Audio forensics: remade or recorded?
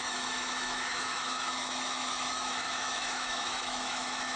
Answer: remade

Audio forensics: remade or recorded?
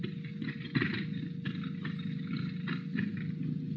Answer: recorded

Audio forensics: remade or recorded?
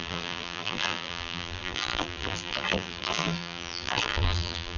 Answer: remade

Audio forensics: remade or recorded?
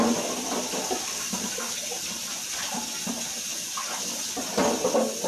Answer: recorded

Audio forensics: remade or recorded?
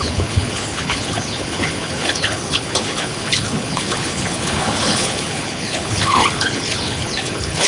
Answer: remade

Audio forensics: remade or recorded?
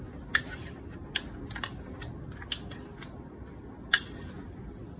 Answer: recorded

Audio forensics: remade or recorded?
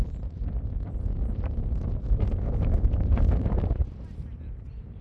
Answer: recorded